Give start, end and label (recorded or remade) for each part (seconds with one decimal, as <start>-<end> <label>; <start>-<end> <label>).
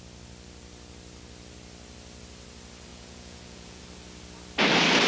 0.0-2.9 recorded; 2.9-3.8 remade; 3.8-5.1 recorded